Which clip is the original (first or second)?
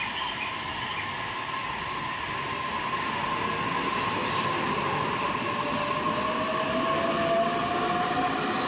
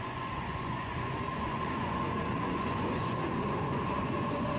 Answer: first